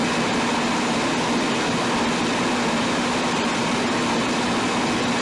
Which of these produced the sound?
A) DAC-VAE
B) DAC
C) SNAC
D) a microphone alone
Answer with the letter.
D